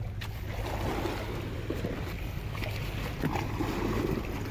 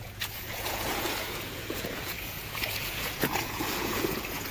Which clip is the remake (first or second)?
second